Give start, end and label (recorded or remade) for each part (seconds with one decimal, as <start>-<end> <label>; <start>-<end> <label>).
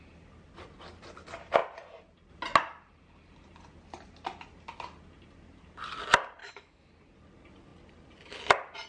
0.0-6.4 recorded; 6.4-6.9 remade; 6.9-8.9 recorded